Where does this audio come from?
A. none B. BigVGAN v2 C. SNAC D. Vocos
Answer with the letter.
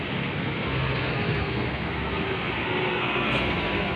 C